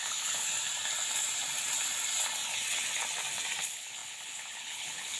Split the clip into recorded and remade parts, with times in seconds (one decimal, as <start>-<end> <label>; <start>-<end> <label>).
0.0-0.5 remade; 0.5-3.6 recorded; 3.6-5.2 remade